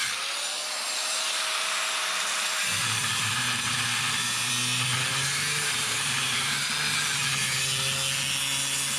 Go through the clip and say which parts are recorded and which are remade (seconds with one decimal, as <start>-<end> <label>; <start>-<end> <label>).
0.0-1.0 recorded; 1.0-4.5 remade; 4.5-5.1 recorded; 5.1-6.7 remade; 6.7-9.0 recorded